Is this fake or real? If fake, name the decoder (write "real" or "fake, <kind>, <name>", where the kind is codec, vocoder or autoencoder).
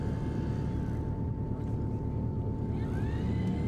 real